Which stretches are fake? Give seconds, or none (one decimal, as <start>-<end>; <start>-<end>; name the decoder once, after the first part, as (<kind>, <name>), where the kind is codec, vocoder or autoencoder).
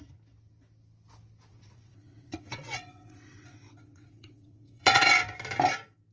1.5-5.1 (vocoder, WaveNeXt)